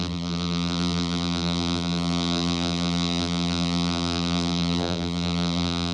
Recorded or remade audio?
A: remade